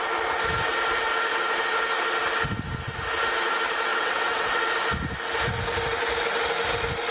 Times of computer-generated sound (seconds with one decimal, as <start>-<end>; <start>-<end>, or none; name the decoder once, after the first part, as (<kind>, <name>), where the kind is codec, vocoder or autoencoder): 3.9-4.6 (vocoder, WaveNeXt)